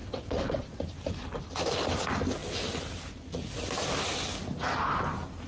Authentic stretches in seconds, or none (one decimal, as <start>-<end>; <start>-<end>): 0.8-5.5